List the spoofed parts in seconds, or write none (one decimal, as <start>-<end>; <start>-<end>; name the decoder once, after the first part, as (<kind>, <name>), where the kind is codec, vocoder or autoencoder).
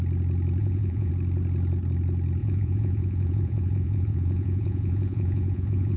0.6-1.1 (vocoder, Vocos); 2.4-6.0